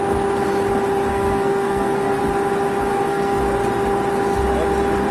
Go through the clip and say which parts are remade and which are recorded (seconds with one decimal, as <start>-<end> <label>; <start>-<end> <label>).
0.0-1.1 recorded; 1.1-2.2 remade; 2.2-2.9 recorded; 2.9-3.4 remade; 3.4-5.1 recorded